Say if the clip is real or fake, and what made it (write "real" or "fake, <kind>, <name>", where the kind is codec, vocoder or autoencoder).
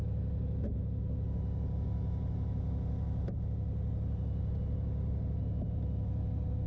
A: real